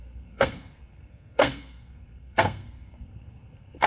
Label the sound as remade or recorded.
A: remade